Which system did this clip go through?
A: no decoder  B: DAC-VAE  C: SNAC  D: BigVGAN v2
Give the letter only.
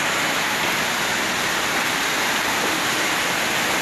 A